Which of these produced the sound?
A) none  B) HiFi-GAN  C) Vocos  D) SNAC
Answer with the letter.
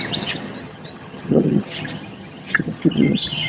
B